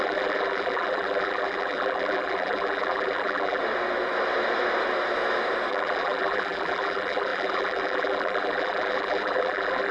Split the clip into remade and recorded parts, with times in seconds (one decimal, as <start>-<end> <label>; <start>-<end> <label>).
0.0-3.6 remade; 3.6-5.7 recorded; 5.7-9.9 remade